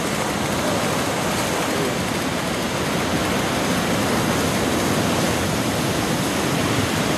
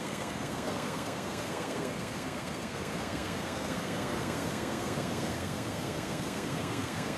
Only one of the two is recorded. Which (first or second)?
first